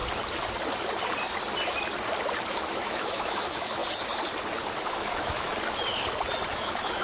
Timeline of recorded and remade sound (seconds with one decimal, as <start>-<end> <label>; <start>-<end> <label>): 0.0-2.5 recorded; 2.5-3.8 remade; 3.8-4.8 recorded; 4.8-5.5 remade; 5.5-6.5 recorded; 6.5-7.0 remade